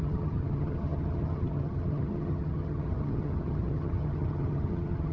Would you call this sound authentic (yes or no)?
no